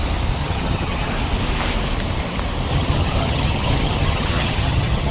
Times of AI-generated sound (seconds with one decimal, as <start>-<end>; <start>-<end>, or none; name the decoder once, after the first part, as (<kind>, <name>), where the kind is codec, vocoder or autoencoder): 0.4-1.1 (vocoder, HiFi-GAN); 2.7-5.1